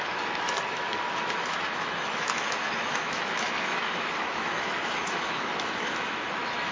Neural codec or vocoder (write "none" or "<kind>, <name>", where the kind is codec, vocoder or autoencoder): autoencoder, DAC-VAE